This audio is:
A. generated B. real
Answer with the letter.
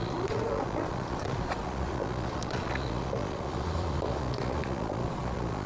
A